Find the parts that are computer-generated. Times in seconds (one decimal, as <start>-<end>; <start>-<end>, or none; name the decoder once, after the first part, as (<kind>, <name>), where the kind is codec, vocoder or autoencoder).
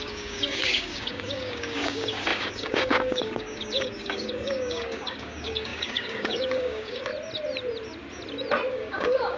0.0-7.1 (codec, DAC); 8.7-9.4